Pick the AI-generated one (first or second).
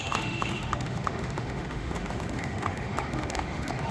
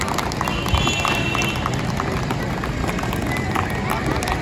first